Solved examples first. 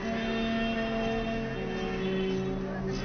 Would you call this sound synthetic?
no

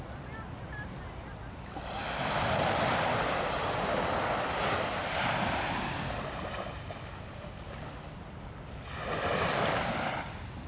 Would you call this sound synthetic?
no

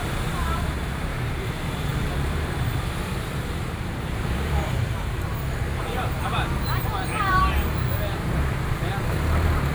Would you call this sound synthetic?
yes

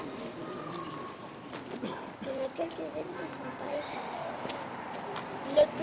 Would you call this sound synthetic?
no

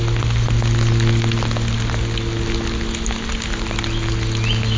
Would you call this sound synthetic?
no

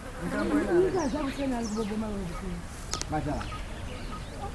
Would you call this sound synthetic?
no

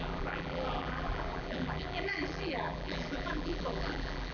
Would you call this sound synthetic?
yes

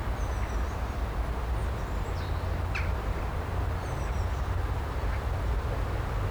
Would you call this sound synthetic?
no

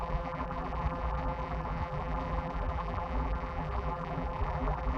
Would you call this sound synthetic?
yes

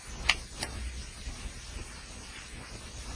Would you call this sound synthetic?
no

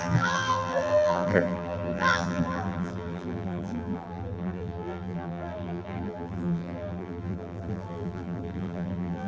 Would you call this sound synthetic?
yes